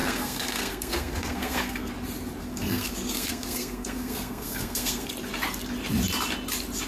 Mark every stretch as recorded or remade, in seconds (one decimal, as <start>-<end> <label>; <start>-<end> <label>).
0.0-1.9 remade; 1.9-2.4 recorded; 2.4-5.1 remade; 5.1-6.9 recorded